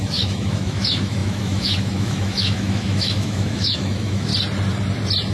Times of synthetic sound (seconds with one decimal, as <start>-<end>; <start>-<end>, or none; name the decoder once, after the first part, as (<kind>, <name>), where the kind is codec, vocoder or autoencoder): 0.0-4.3 (autoencoder, DAC-VAE)